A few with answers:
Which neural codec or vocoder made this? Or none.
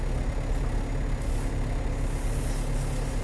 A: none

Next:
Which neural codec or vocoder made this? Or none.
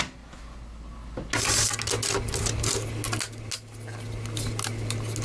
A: none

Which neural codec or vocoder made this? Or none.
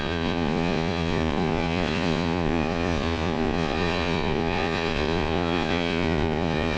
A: vocoder, Vocos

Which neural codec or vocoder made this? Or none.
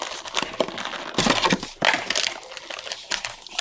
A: none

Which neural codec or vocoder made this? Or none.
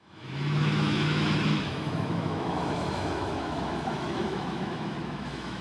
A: autoencoder, DAC-VAE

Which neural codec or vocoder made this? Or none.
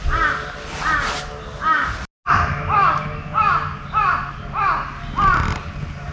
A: none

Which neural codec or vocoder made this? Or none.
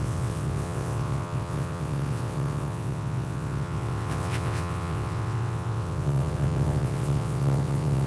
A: vocoder, WaveNeXt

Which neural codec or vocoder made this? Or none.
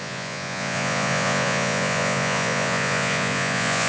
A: vocoder, Vocos